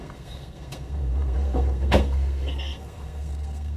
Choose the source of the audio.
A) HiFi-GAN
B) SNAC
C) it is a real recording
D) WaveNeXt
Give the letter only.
B